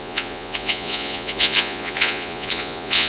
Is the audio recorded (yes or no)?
no